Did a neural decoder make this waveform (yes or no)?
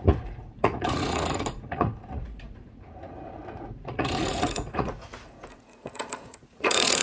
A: yes